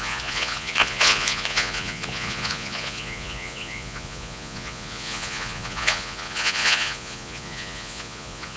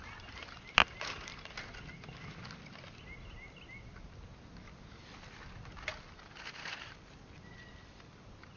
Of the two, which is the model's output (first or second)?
first